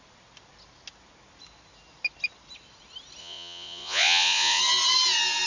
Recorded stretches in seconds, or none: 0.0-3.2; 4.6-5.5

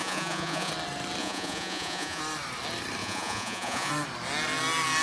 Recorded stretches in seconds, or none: 0.7-1.2; 2.2-3.0; 3.9-5.0

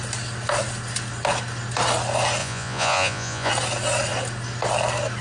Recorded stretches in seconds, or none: 0.0-2.4; 3.5-5.2